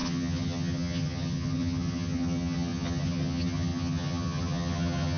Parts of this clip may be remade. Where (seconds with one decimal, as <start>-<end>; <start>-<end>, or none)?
0.0-5.2